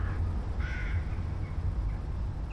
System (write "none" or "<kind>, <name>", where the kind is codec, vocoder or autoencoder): none